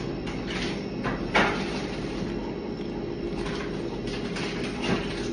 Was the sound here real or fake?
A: real